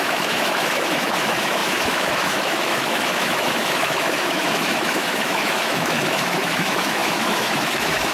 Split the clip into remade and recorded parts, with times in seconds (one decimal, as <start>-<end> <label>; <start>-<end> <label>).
0.0-8.1 remade